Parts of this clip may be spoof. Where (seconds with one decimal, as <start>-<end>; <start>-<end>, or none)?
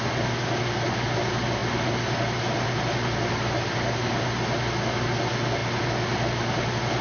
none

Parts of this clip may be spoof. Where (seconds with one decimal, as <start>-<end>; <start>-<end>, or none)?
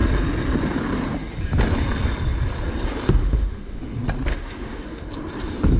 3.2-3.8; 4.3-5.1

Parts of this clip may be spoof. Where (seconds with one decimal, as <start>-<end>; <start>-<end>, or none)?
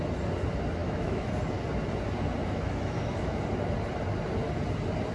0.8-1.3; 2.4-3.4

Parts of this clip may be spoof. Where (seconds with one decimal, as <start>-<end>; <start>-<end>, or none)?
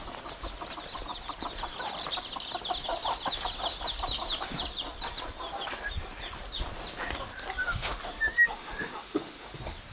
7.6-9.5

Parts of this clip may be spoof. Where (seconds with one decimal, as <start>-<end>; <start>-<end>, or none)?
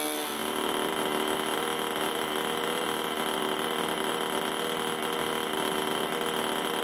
0.4-3.4; 5.2-6.0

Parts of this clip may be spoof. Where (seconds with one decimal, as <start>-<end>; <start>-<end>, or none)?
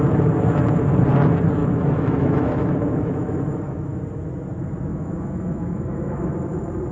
1.6-4.0; 4.9-6.3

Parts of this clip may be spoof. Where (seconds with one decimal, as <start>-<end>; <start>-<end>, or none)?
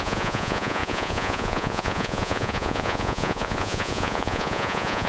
0.0-5.1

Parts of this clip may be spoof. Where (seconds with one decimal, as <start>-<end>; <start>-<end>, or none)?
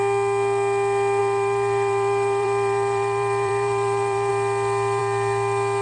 1.2-4.3